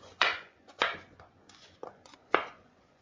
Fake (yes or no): yes